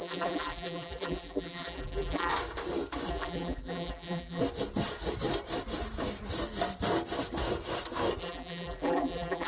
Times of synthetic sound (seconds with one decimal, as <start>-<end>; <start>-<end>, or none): 0.0-2.3; 3.1-4.4; 8.2-9.5